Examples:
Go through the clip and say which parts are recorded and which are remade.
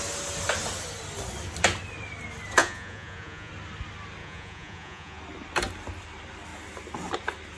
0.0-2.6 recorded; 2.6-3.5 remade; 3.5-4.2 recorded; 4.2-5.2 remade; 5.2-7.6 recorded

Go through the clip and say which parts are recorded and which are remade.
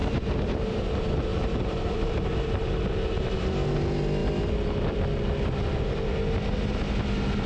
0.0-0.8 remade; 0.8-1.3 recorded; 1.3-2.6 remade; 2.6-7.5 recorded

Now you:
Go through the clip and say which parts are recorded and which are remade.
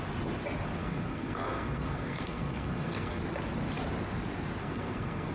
0.0-0.8 recorded; 0.8-3.2 remade; 3.2-4.6 recorded; 4.6-5.3 remade